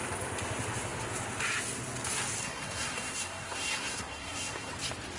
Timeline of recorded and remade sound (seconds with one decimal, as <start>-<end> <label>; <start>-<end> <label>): 0.0-2.4 recorded; 2.4-4.7 remade; 4.7-5.2 recorded